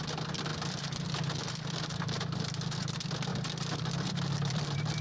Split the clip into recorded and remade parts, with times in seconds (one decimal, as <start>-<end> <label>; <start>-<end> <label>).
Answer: 0.0-0.5 recorded; 0.5-1.9 remade; 1.9-3.3 recorded; 3.3-5.0 remade